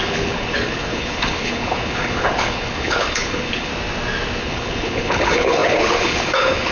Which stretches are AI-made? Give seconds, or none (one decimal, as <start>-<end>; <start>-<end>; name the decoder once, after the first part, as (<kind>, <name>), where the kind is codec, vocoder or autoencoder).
0.0-3.7 (codec, HILCodec); 4.4-6.7